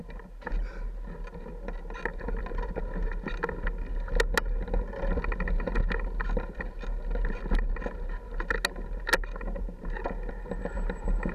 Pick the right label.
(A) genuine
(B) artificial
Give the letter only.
A